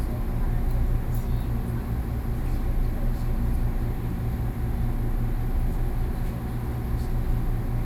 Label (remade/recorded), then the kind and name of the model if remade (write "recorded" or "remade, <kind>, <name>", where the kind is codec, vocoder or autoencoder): recorded